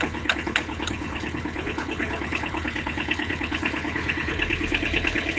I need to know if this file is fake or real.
fake